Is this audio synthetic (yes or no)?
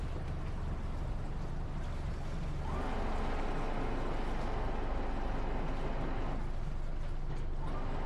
no